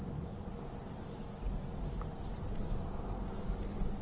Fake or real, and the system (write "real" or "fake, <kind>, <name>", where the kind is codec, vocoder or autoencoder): real